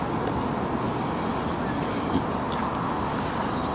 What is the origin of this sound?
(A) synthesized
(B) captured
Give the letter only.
B